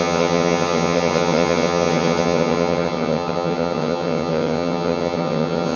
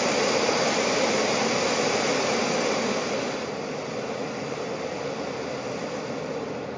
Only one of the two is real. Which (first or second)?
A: second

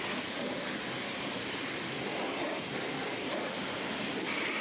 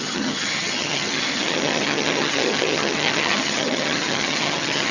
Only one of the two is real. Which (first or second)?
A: first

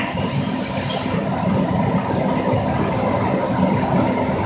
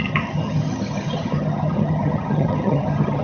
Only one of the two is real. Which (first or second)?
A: first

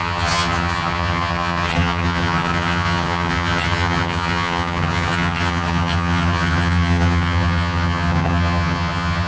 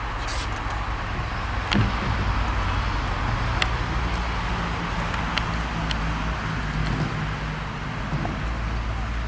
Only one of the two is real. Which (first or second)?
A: second